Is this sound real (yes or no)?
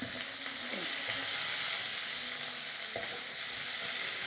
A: yes